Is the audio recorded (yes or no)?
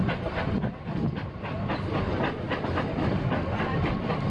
yes